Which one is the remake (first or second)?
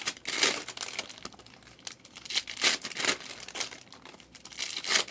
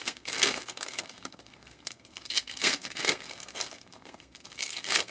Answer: second